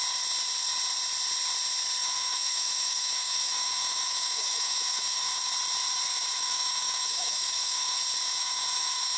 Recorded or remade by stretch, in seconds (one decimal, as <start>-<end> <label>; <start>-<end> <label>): 0.0-2.0 recorded; 2.0-5.5 remade; 5.5-6.3 recorded; 6.3-8.0 remade; 8.0-8.4 recorded; 8.4-9.2 remade